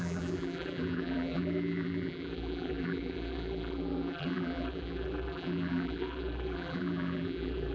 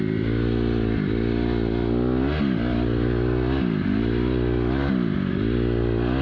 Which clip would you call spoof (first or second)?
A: first